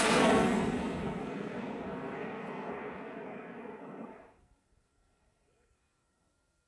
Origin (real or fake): fake